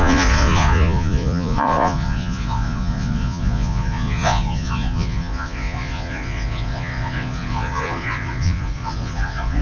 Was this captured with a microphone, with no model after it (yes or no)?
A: no